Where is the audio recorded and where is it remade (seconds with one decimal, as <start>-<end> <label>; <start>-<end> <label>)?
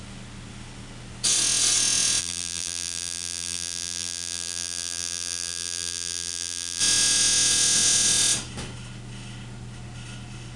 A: 0.0-2.2 recorded; 2.2-6.8 remade; 6.8-10.6 recorded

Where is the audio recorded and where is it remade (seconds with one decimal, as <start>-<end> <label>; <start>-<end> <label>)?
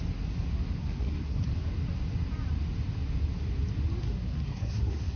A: 0.0-0.8 recorded; 0.8-1.5 remade; 1.5-4.0 recorded; 4.0-5.2 remade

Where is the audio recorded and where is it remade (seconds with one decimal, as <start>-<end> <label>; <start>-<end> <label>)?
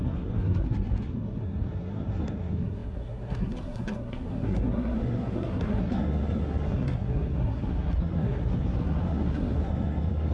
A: 0.0-10.3 remade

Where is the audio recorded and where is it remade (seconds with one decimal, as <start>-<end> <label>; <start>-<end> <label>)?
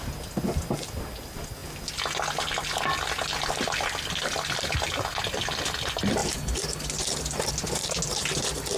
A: 0.0-8.8 recorded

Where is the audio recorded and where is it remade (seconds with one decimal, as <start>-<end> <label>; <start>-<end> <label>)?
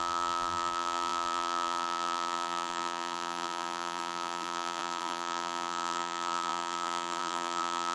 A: 0.0-7.9 remade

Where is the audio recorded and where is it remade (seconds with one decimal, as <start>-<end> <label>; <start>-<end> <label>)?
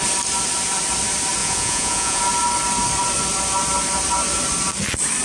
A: 0.0-1.4 recorded; 1.4-2.2 remade; 2.2-5.2 recorded